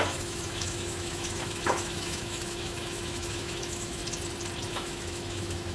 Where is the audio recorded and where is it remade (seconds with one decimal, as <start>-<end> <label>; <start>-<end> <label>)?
0.0-4.0 remade; 4.0-4.7 recorded; 4.7-5.7 remade